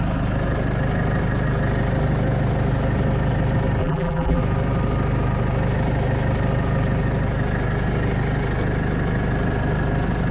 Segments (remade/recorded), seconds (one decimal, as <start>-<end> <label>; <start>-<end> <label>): 0.0-3.8 recorded; 3.8-4.4 remade; 4.4-10.3 recorded